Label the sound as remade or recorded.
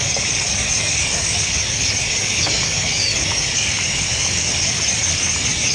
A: remade